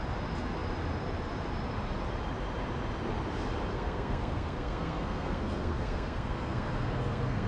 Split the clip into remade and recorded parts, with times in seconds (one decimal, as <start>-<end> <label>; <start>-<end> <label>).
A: 0.0-3.7 recorded; 3.7-7.5 remade